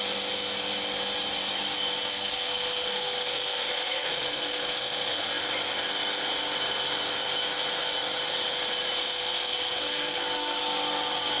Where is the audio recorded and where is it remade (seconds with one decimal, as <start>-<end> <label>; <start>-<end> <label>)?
0.0-2.1 recorded; 2.1-5.3 remade; 5.3-9.0 recorded; 9.0-10.6 remade; 10.6-11.4 recorded